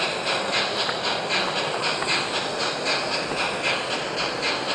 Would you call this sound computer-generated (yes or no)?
no